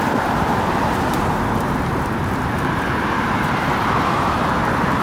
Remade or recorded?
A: remade